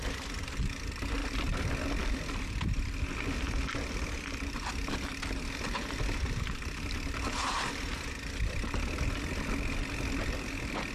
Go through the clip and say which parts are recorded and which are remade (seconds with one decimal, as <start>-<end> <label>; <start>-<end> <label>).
0.0-1.2 recorded; 1.2-3.3 remade; 3.3-10.9 recorded